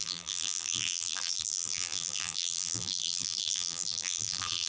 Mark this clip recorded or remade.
remade